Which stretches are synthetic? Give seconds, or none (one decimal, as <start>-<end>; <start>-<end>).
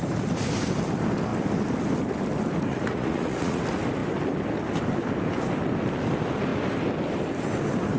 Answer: 2.7-3.6